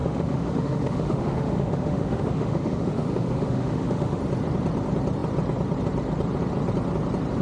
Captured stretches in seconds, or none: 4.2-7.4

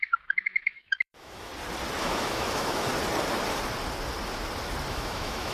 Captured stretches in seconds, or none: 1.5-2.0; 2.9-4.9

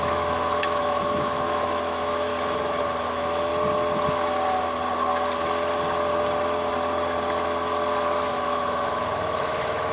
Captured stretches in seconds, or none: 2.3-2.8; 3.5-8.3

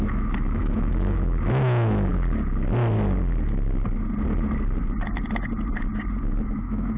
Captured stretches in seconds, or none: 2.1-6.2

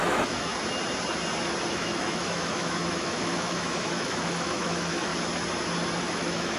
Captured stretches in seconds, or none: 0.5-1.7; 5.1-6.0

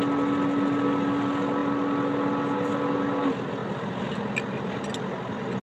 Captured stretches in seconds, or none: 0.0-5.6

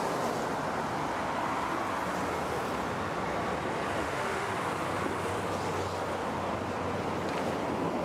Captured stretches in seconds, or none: 0.0-4.0; 4.5-8.0